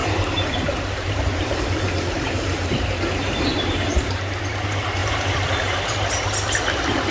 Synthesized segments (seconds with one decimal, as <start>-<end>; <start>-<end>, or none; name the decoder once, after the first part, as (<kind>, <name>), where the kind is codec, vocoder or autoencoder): 0.0-4.3 (vocoder, BigVGAN v2); 5.0-5.9